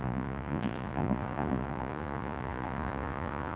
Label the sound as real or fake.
fake